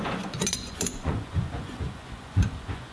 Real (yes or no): no